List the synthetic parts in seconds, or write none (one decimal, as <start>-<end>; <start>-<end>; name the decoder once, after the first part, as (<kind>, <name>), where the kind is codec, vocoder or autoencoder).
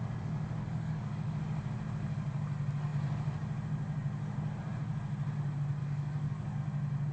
0.6-1.4 (codec, DAC); 5.8-6.6